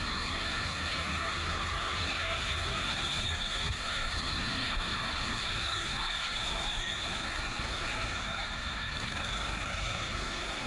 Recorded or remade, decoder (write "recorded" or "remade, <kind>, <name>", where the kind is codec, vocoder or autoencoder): remade, codec, SNAC